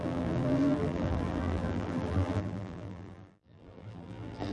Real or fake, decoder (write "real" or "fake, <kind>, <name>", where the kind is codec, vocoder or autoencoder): fake, vocoder, BigVGAN v2